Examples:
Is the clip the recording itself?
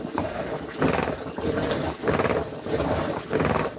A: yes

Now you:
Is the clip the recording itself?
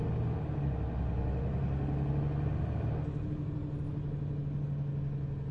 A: yes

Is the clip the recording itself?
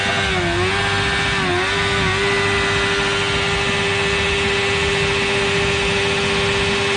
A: yes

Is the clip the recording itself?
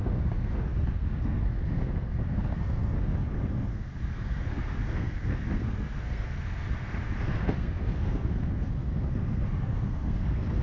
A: no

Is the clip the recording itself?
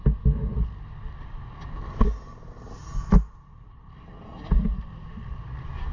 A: yes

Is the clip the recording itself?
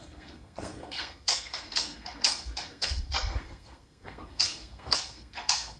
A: no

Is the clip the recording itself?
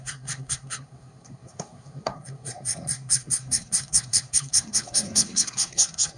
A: no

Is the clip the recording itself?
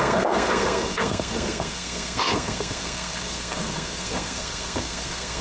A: no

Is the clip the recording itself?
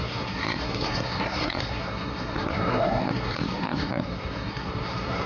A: no